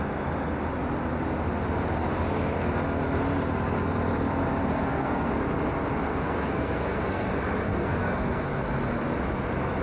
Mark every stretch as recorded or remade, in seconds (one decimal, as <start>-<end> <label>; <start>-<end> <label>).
0.0-4.7 recorded; 4.7-5.3 remade; 5.3-6.1 recorded; 6.1-7.3 remade; 7.3-7.7 recorded; 7.7-8.6 remade; 8.6-9.8 recorded